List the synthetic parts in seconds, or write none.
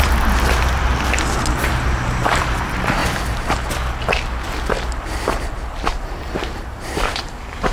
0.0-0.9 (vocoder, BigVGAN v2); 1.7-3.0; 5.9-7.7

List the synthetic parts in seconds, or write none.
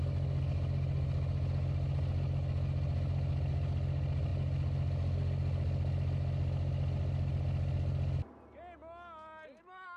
none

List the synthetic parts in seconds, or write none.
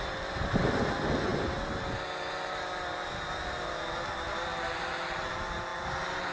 none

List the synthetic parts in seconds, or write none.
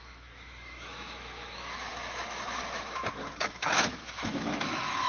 0.0-5.1 (autoencoder, DAC-VAE)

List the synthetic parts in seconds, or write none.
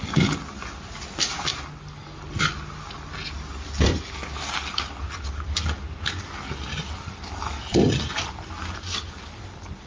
none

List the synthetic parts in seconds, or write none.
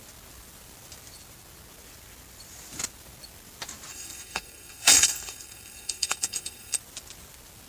3.9-6.8 (codec, SNAC)